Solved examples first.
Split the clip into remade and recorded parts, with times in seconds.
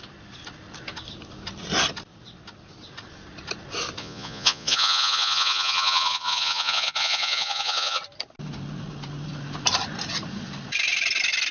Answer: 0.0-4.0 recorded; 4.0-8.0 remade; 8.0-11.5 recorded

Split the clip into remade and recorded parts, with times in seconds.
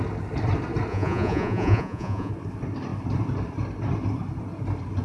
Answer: 0.0-0.9 recorded; 0.9-2.3 remade; 2.3-5.0 recorded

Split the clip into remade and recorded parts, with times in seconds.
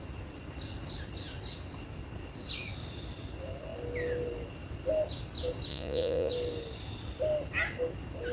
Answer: 0.0-5.7 recorded; 5.7-6.3 remade; 6.3-8.3 recorded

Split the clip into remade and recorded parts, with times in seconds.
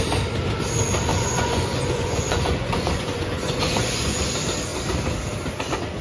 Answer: 0.0-1.1 recorded; 1.1-4.3 remade; 4.3-6.0 recorded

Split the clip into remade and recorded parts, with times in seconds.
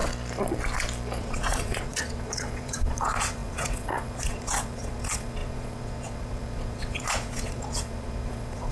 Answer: 0.0-1.2 recorded; 1.2-8.7 remade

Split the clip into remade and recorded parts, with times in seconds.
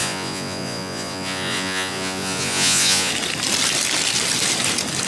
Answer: 0.0-3.1 remade; 3.1-5.1 recorded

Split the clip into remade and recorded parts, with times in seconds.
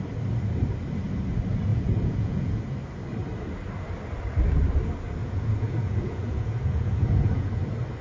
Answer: 0.0-1.7 recorded; 1.7-2.6 remade; 2.6-5.2 recorded; 5.2-7.6 remade; 7.6-8.0 recorded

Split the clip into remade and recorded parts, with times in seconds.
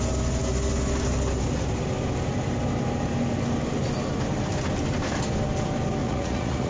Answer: 0.0-6.0 recorded; 6.0-6.7 remade